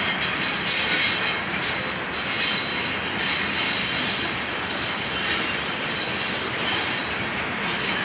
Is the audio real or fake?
real